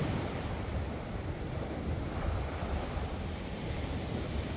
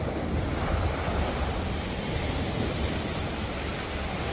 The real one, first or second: second